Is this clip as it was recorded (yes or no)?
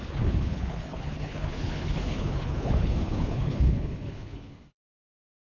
no